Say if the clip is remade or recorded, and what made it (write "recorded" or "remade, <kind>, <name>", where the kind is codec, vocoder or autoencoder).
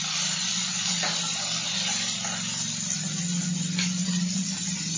recorded